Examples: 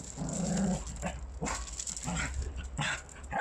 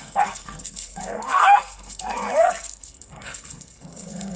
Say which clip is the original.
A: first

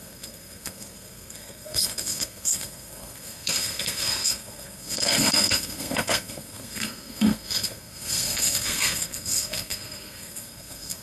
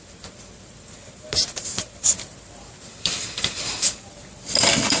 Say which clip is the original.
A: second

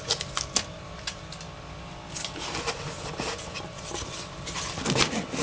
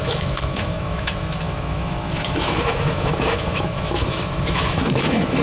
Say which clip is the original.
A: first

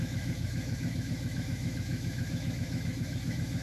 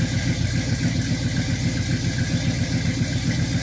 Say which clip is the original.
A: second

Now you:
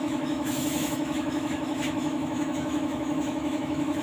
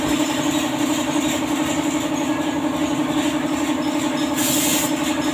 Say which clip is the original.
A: second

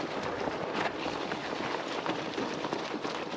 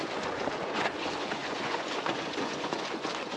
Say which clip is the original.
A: first